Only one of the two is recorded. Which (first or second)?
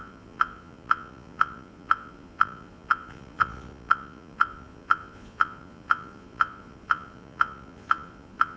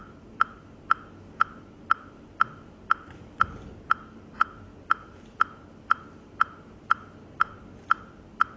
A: second